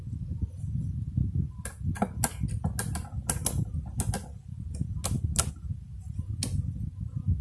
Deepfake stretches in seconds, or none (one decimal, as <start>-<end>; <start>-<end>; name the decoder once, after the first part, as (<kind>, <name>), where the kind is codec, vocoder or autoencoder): none